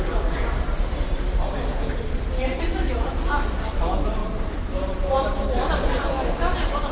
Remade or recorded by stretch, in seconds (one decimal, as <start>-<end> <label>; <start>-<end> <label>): 0.0-6.9 remade